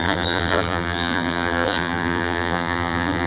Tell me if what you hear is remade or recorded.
remade